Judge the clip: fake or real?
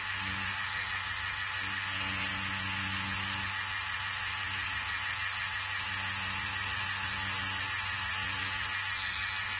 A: real